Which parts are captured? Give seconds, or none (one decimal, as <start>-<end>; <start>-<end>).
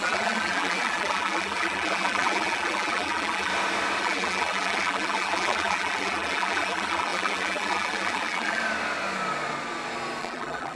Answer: 3.5-4.0; 8.6-10.2